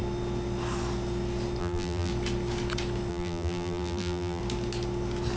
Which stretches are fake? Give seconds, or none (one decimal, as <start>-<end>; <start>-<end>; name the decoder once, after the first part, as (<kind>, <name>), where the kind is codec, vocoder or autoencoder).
1.6-2.1 (vocoder, BigVGAN v2); 3.1-4.4